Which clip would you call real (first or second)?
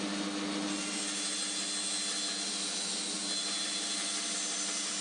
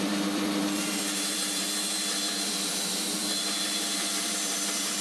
first